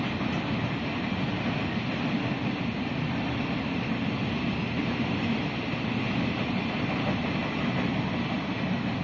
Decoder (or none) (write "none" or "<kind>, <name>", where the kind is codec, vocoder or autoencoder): none